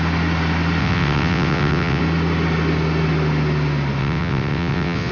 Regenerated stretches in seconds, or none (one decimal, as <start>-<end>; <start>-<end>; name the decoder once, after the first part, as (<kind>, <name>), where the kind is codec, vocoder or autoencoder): 0.8-2.0 (vocoder, WaveNeXt); 4.0-5.1